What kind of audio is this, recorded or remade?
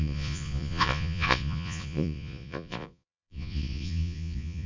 remade